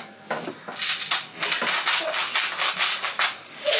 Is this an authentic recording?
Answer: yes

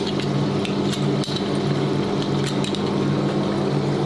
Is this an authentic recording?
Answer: yes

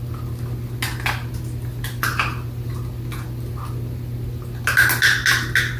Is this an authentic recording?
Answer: yes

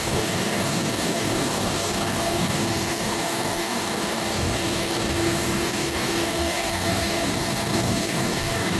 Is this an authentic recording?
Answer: no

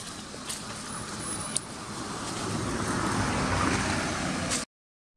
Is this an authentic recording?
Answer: yes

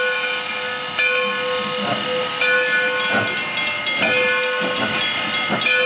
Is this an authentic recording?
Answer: yes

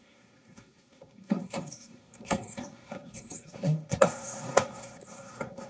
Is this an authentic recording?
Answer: no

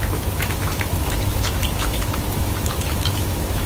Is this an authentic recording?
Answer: no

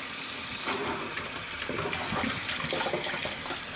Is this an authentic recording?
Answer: yes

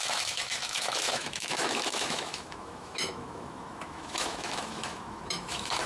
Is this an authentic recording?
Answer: no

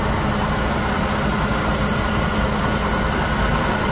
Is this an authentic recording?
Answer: yes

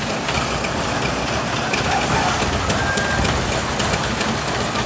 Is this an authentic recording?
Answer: yes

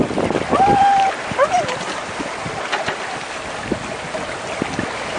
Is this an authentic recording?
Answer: yes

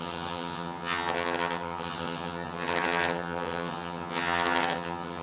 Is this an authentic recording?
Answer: no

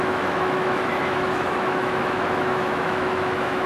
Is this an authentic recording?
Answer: no